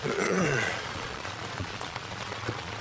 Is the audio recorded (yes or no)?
no